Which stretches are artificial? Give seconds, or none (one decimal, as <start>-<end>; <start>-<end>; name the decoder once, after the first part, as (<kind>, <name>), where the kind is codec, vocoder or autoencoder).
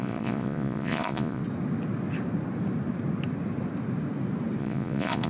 0.0-1.4 (vocoder, Vocos); 4.6-5.3